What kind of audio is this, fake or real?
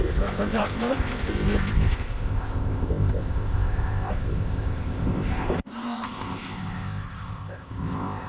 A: fake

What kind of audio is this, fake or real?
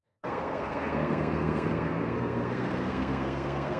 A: fake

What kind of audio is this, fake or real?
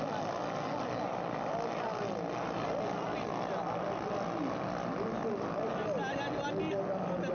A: real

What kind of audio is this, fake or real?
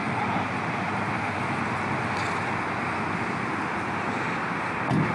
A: real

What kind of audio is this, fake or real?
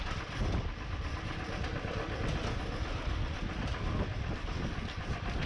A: real